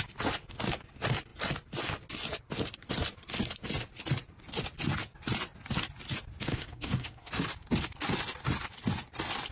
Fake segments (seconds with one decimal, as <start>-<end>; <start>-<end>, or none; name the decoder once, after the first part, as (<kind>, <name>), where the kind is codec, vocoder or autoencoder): 6.5-7.3 (codec, SNAC)